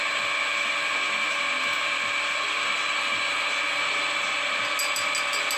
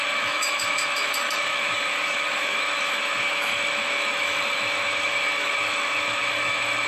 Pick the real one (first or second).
first